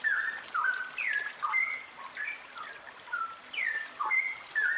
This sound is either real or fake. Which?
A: real